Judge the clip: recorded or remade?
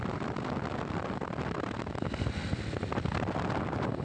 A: recorded